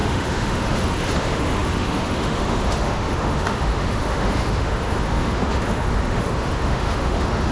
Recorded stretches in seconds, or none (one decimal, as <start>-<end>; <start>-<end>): none

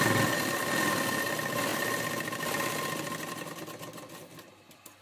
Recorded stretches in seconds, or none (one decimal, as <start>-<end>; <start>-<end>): 0.0-5.0

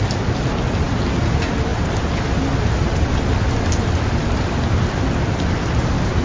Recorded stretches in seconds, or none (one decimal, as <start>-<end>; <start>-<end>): 0.0-6.2

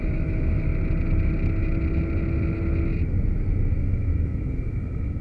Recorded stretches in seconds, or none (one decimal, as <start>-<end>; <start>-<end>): 0.7-3.8

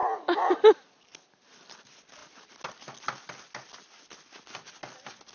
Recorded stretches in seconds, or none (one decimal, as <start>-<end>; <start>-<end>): 0.0-5.3

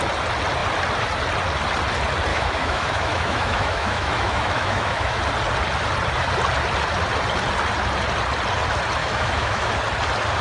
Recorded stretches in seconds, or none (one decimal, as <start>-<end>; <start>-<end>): 0.0-2.3; 5.2-9.0; 9.7-10.4

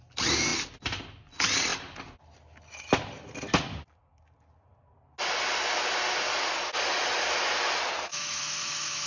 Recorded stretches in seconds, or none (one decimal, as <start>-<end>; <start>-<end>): 0.0-8.1